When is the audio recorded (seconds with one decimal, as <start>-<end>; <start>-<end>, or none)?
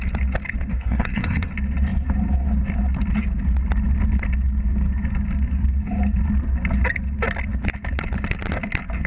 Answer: 0.0-0.7; 1.5-9.1